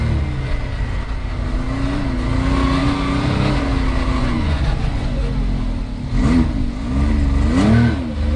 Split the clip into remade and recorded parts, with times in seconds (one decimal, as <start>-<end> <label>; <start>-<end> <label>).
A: 0.0-4.2 recorded; 4.2-5.2 remade; 5.2-8.4 recorded